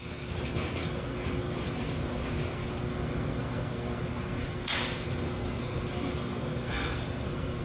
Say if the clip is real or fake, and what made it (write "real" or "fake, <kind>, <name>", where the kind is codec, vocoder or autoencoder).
fake, codec, SNAC